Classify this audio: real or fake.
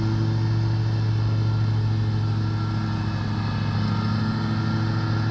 real